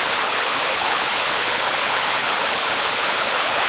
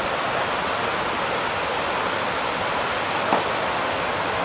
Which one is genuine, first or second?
second